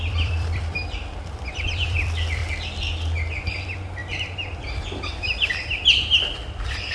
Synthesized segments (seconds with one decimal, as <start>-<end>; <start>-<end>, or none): 0.0-2.4; 3.4-4.0; 5.1-6.9